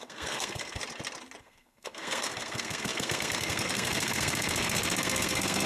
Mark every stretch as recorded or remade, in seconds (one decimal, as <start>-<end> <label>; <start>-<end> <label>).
0.0-0.8 remade; 0.8-1.4 recorded; 1.4-5.7 remade